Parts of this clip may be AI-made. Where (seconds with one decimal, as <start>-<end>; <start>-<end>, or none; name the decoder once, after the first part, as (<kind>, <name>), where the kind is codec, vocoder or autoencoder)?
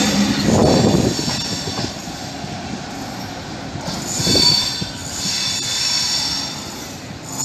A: none